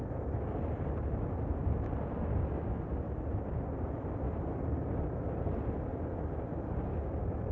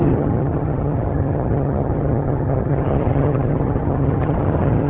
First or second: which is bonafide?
first